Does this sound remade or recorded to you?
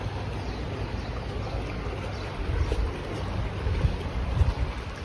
recorded